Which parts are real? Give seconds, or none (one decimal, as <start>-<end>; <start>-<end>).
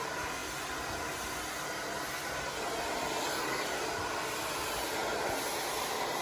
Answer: 0.0-6.2